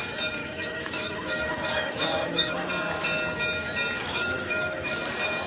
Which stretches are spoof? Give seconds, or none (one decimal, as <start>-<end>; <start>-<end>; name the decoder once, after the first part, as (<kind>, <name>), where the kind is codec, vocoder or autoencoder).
0.4-2.7 (autoencoder, DAC-VAE); 4.0-5.0